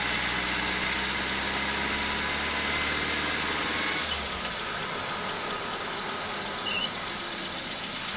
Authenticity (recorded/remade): recorded